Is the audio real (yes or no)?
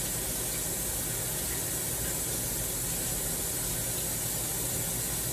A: yes